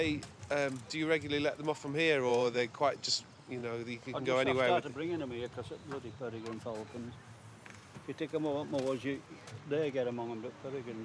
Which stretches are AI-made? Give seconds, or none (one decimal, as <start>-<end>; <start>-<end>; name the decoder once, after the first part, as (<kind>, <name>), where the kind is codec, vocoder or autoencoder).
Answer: 2.3-3.1 (vocoder, BigVGAN v2)